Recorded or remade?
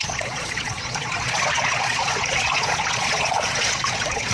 remade